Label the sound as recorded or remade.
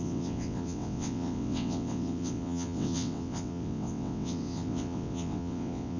remade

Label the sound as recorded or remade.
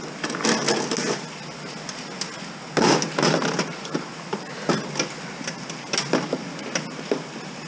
recorded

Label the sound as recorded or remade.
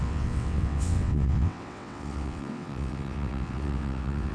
remade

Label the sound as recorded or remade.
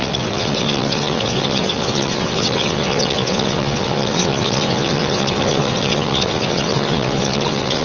remade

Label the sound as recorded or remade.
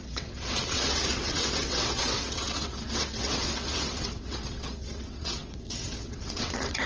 remade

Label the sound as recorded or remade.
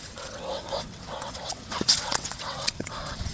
remade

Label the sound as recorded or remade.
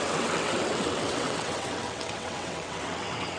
remade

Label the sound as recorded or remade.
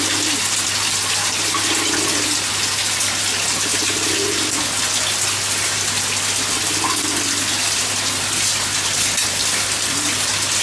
recorded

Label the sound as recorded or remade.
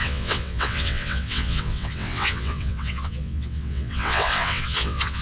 remade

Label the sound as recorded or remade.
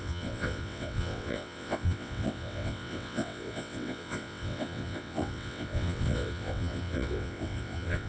remade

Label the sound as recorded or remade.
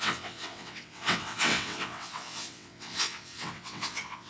remade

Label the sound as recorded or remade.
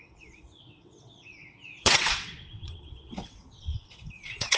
remade